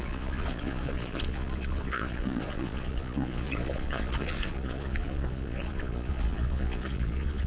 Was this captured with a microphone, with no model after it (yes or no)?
no